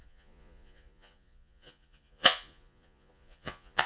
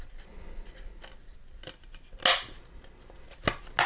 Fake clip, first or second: first